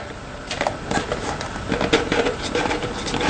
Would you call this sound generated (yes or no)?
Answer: yes